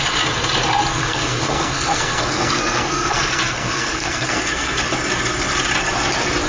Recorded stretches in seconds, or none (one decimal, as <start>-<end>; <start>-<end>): 0.0-0.9; 4.8-6.5